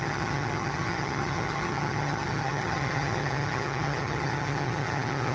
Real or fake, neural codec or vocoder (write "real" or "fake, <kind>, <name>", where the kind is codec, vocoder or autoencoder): fake, vocoder, HiFi-GAN